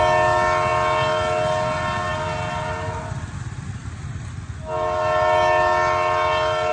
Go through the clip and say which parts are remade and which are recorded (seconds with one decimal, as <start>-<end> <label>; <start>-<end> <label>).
0.0-6.7 recorded